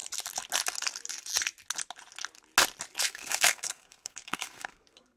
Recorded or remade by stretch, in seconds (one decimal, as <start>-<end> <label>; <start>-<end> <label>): 0.0-3.0 recorded; 3.0-5.2 remade